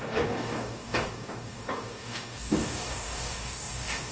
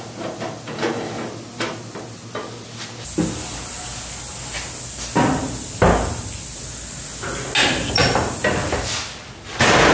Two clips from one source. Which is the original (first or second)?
second